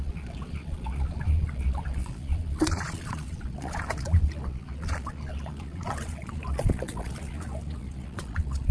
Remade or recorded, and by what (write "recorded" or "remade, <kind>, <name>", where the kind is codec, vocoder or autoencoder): remade, vocoder, Vocos